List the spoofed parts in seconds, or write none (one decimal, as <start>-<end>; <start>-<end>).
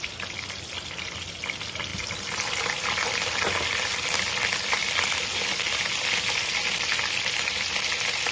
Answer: none